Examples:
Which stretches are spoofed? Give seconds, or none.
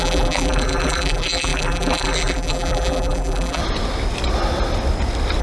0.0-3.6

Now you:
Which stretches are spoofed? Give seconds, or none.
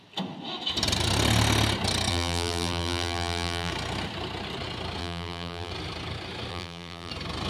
2.1-3.7; 5.0-5.7; 6.5-7.1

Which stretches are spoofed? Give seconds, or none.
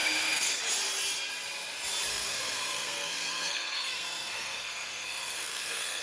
0.0-0.6; 2.1-6.0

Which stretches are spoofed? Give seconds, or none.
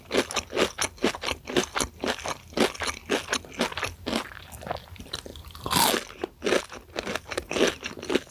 none